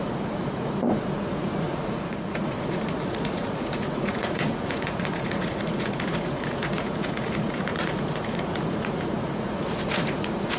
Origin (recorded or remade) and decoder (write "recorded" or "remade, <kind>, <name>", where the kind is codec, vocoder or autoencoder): remade, vocoder, Vocos